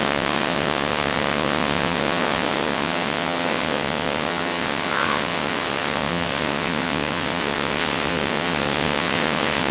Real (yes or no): no